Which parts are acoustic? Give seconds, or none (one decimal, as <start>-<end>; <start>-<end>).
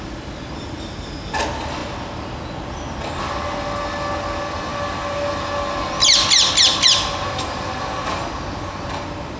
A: 0.0-9.4